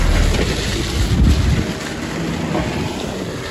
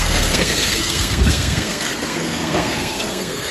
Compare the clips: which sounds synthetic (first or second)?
second